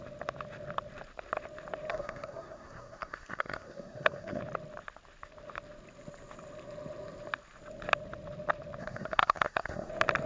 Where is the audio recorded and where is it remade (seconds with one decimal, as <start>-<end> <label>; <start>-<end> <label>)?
0.0-1.9 recorded; 1.9-4.4 remade; 4.4-8.8 recorded; 8.8-9.9 remade; 9.9-10.3 recorded